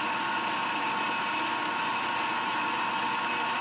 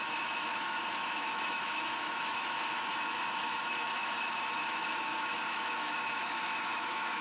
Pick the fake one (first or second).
second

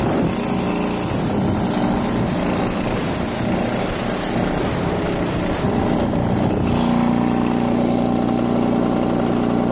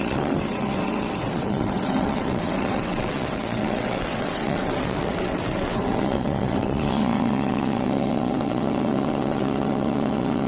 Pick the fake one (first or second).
second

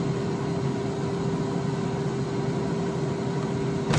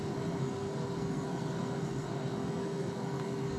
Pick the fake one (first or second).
second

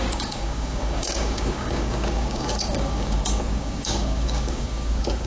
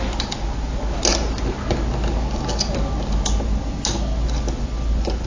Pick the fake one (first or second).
first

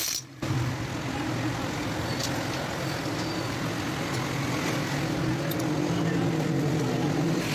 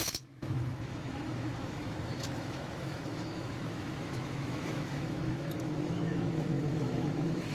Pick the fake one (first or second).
second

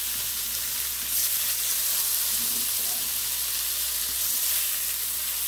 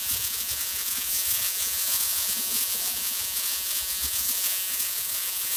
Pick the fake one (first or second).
second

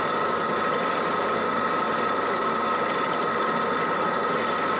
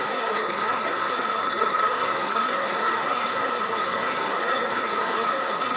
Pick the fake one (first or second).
second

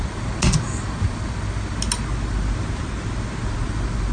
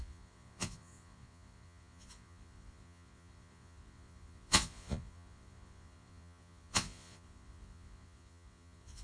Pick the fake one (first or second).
second